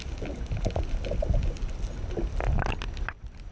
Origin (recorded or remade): recorded